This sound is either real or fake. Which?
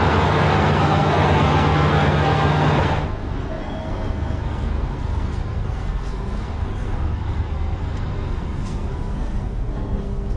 fake